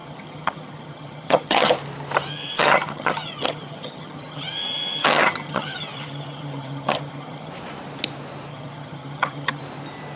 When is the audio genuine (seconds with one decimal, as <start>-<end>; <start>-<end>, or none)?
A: 1.7-2.3; 7.5-8.5; 9.6-10.2